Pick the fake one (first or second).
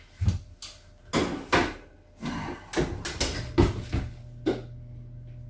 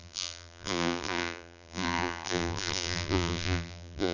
second